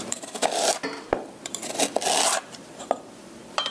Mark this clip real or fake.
fake